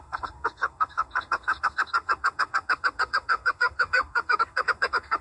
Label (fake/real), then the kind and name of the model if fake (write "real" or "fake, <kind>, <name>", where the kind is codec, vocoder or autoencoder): fake, codec, SNAC